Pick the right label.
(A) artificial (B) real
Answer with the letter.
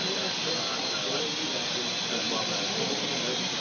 B